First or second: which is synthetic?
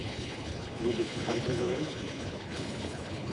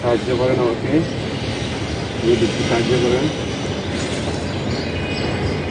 first